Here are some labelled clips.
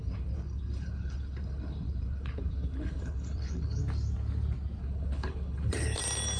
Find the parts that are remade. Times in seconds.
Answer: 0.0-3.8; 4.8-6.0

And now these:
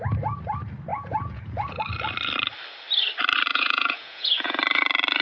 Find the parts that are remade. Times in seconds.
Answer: 0.9-1.8; 3.5-4.6

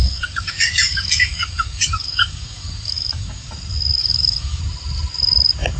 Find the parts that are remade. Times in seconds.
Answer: 0.0-3.5; 4.0-4.6

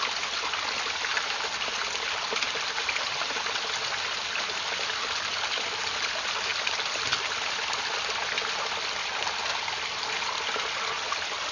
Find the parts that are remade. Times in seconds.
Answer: 6.5-7.7

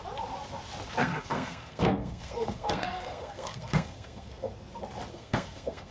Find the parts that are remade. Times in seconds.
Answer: 1.0-4.5; 5.1-5.9